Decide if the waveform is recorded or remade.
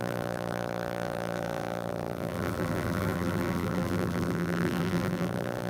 remade